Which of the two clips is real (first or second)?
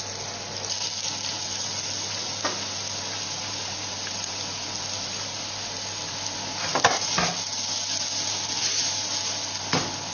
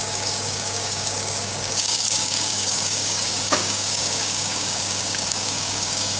first